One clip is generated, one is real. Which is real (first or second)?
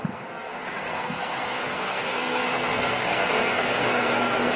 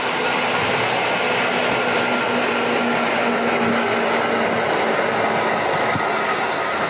second